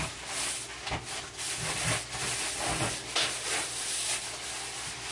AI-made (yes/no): no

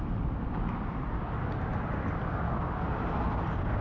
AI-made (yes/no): no